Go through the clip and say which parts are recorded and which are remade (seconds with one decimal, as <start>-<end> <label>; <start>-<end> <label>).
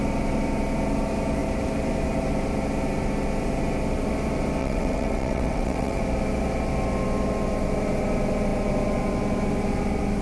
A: 0.0-4.6 recorded; 4.6-6.0 remade; 6.0-10.2 recorded